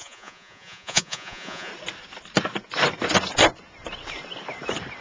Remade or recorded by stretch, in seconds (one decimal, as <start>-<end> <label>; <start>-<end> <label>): 0.0-1.7 remade; 1.7-5.0 recorded